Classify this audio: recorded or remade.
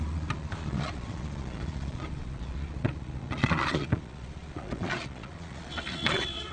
remade